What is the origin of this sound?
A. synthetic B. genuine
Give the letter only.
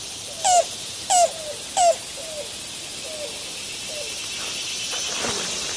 B